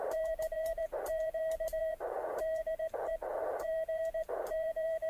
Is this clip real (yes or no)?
no